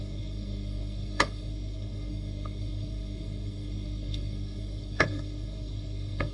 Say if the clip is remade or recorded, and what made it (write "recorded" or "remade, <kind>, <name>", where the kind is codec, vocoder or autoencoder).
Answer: remade, codec, SNAC